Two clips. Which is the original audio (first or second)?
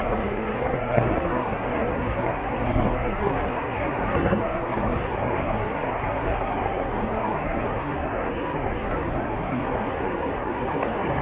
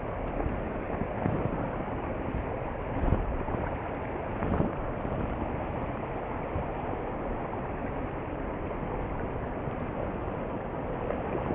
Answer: second